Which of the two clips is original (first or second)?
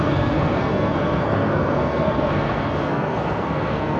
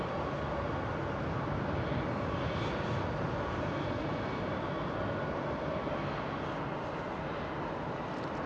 second